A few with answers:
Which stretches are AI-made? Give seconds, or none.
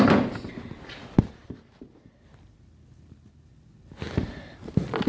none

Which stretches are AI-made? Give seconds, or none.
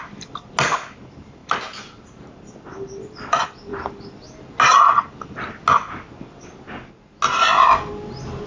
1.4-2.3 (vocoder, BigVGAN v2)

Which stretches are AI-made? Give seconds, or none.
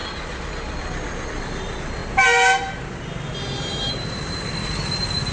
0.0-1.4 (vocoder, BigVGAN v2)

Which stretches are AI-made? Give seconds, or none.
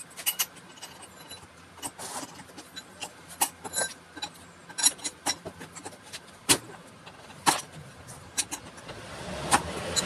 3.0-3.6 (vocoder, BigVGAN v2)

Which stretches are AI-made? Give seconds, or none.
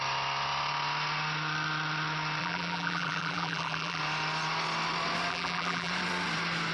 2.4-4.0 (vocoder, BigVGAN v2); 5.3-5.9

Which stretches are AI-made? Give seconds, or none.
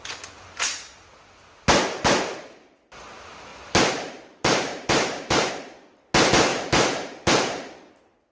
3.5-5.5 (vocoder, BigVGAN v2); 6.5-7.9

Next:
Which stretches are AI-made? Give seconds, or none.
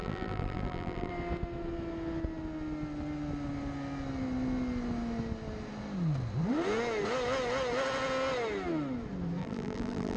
0.0-1.1 (vocoder, BigVGAN v2); 9.4-10.2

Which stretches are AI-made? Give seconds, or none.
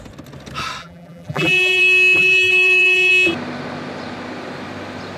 0.8-1.8 (vocoder, BigVGAN v2); 2.2-3.1